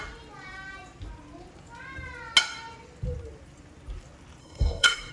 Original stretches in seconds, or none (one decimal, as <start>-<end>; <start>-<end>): 0.0-4.4